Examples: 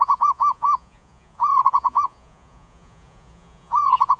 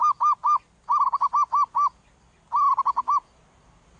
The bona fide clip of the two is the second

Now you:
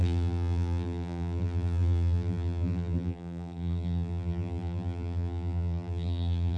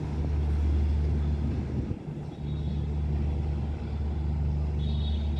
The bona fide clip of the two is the second